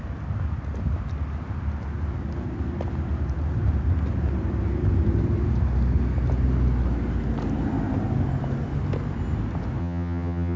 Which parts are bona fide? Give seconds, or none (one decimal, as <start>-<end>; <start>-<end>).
0.0-9.8